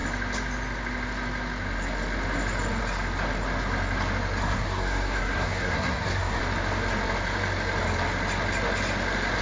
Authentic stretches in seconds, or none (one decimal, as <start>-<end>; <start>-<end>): 0.0-4.4; 6.4-9.4